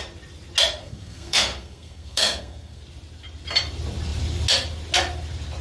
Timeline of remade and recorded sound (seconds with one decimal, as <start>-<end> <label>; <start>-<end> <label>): 0.0-0.8 recorded; 0.8-2.8 remade; 2.8-5.6 recorded

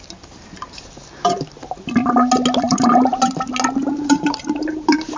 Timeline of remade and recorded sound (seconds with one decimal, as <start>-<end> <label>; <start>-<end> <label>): 0.0-2.0 remade; 2.0-2.6 recorded; 2.6-3.1 remade; 3.1-3.9 recorded; 3.9-5.2 remade

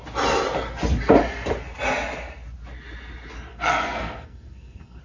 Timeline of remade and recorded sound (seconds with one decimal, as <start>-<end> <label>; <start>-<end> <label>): 0.0-3.5 recorded; 3.5-5.0 remade